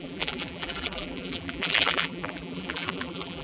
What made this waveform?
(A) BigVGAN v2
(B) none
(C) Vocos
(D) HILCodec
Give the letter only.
A